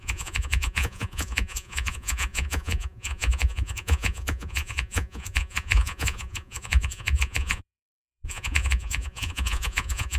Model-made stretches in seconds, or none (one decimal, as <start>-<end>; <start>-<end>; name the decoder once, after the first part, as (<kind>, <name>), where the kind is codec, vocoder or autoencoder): 0.0-10.2 (vocoder, Vocos)